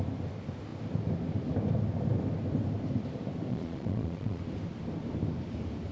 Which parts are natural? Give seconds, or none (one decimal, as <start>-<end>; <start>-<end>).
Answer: 0.0-3.5; 4.4-5.9